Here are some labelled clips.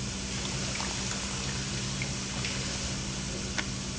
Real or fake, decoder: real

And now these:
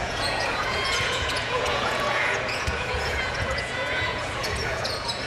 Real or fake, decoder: fake, vocoder, Vocos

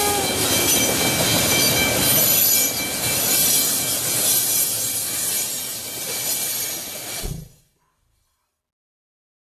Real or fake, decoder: real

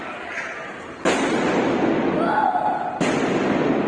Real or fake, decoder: real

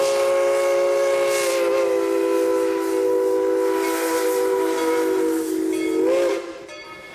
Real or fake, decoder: real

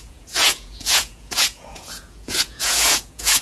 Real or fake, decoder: fake, vocoder, Vocos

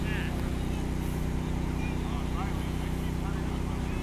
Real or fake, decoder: real